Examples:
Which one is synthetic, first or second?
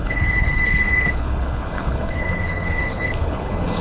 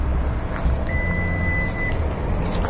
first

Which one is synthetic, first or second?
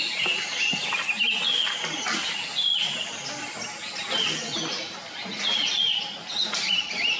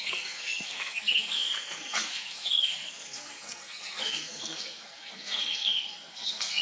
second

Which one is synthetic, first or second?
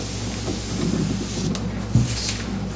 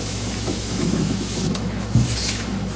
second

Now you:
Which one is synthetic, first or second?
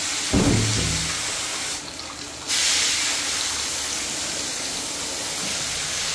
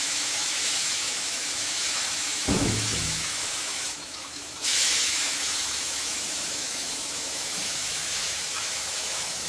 second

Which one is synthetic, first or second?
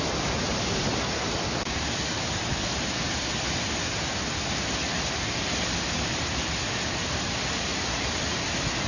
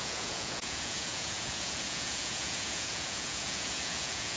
second